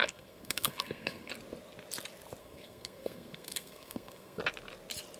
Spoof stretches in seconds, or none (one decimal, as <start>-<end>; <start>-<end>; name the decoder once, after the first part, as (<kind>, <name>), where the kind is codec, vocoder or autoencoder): 0.0-1.3 (codec, SNAC); 2.4-4.4